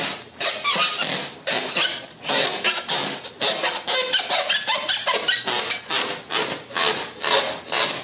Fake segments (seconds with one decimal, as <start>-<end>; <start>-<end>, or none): none